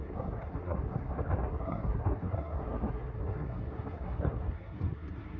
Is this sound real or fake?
fake